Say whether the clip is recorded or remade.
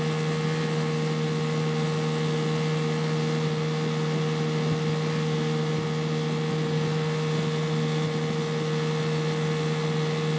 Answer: recorded